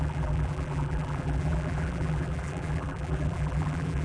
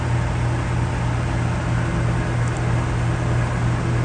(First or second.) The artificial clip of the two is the first